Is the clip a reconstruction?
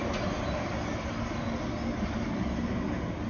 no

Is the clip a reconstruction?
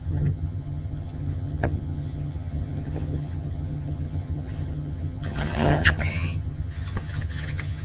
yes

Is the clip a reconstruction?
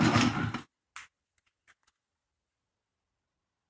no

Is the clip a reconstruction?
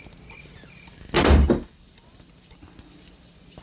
yes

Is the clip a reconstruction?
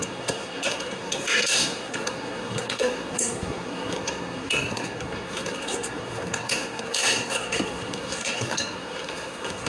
yes